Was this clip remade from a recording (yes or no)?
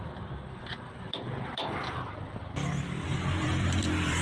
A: yes